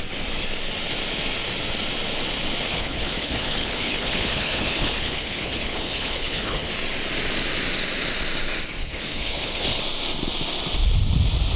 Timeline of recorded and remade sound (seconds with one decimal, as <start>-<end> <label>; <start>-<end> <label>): 0.0-2.7 recorded; 2.7-6.7 remade; 6.7-8.8 recorded; 8.8-9.8 remade; 9.8-11.6 recorded

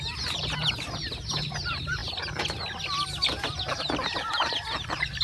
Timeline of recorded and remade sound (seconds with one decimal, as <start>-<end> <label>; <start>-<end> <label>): 0.0-2.0 remade; 2.0-5.2 recorded

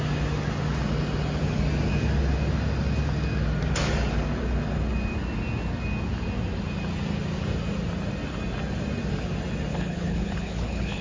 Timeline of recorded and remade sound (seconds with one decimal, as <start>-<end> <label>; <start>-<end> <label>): 0.0-9.7 recorded; 9.7-11.0 remade

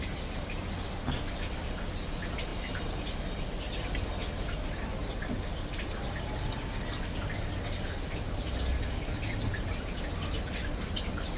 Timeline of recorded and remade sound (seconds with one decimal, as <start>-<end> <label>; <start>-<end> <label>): 0.0-11.4 recorded

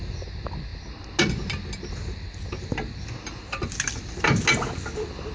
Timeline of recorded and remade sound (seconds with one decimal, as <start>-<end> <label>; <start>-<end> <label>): 0.0-5.3 recorded

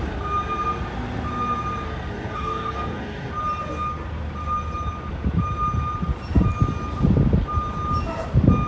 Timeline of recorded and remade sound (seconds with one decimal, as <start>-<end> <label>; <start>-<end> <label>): 0.0-2.1 recorded; 2.1-3.3 remade; 3.3-8.7 recorded